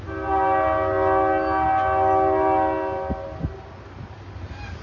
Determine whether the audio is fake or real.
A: real